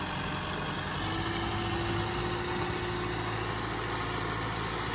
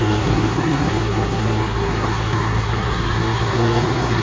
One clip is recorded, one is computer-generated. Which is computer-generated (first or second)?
second